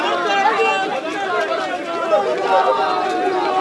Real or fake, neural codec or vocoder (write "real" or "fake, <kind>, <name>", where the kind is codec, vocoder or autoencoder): real